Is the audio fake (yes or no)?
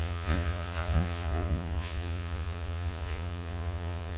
yes